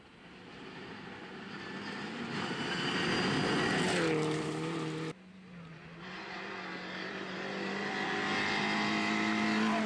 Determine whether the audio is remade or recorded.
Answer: recorded